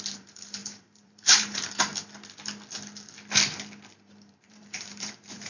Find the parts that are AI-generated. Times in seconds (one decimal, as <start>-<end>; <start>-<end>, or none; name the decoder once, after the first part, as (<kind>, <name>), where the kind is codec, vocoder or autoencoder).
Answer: 0.0-1.9 (vocoder, BigVGAN v2); 3.9-5.5